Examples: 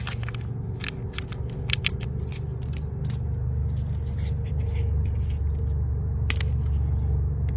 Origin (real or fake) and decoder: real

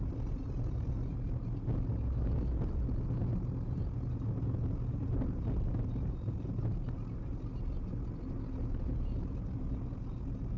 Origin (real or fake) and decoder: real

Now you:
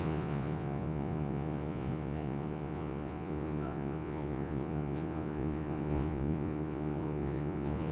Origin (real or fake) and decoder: fake, vocoder, Vocos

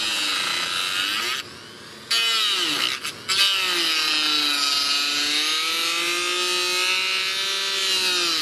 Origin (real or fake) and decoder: real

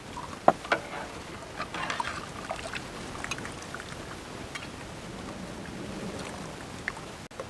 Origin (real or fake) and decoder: real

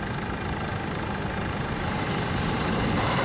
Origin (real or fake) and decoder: real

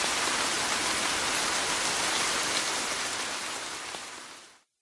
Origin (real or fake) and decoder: real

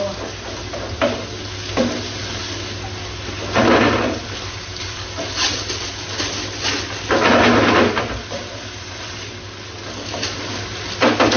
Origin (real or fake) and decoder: real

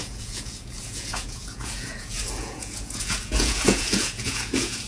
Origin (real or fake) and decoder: fake, vocoder, Vocos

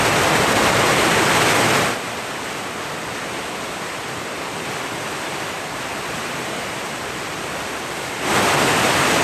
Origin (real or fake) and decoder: fake, vocoder, BigVGAN v2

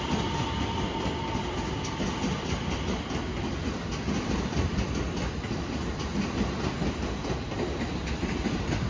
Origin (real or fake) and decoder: real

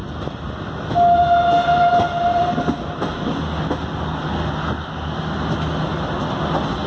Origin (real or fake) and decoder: real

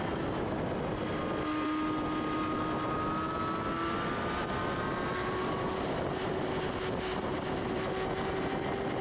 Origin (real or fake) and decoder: real